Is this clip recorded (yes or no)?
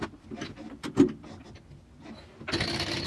yes